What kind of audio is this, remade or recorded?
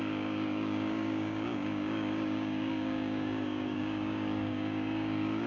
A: remade